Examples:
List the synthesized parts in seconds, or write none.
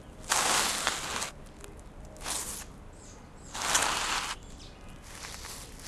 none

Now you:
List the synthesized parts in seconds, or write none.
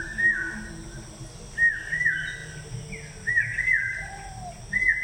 none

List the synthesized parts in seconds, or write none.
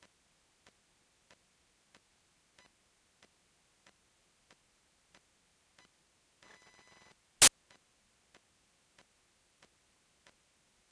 none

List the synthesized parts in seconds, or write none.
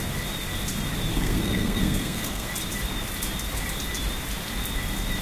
1.1-2.5 (codec, SNAC)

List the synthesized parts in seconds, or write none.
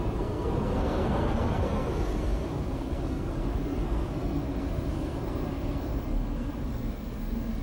0.0-7.6 (codec, SNAC)